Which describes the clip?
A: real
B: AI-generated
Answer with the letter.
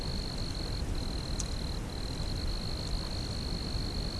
A